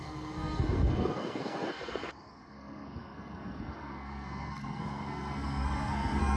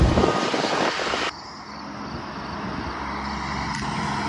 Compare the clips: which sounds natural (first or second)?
second